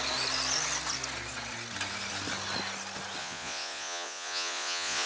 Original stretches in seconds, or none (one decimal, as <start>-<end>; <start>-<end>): 0.0-3.2